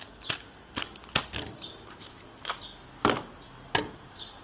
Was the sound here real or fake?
real